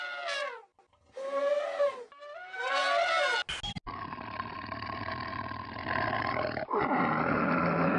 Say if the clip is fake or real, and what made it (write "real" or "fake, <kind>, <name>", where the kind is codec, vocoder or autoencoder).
real